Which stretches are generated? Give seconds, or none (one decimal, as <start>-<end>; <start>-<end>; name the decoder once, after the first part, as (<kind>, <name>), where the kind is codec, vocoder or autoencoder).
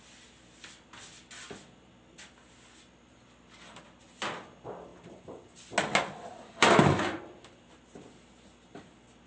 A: 4.9-5.6 (vocoder, BigVGAN v2); 6.3-7.2